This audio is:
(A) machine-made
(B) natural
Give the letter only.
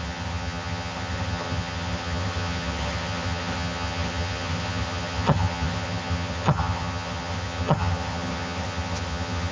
A